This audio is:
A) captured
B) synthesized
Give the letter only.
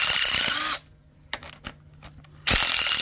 A